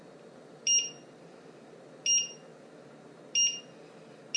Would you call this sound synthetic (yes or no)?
no